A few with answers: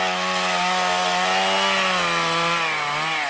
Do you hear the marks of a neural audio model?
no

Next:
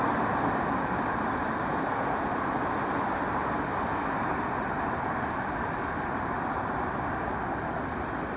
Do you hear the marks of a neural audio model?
no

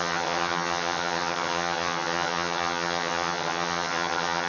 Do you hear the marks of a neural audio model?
yes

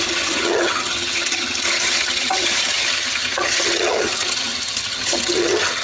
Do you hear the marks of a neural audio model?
yes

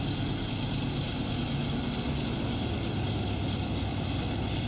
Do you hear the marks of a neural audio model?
no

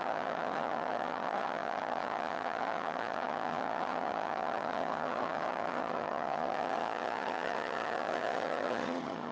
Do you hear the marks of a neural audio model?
yes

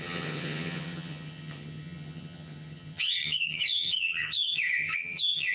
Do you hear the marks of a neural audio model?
yes